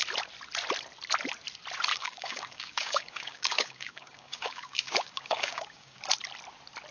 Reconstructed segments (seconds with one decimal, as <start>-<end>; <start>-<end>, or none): 1.9-6.0